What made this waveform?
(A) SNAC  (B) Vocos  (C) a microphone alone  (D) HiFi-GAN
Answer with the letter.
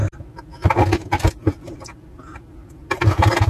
C